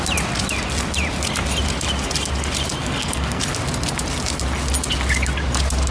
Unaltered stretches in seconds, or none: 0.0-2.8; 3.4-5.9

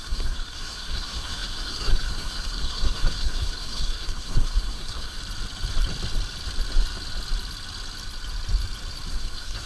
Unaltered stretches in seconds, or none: 5.2-9.1